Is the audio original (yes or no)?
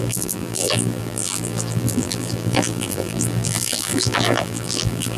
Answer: no